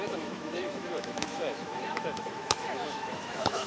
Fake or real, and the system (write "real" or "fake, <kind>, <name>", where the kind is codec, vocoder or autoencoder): fake, autoencoder, DAC-VAE